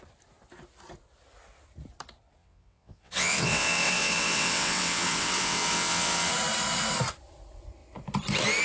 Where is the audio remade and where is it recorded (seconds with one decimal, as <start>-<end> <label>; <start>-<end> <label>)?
0.0-2.4 recorded; 2.4-6.3 remade; 6.3-8.6 recorded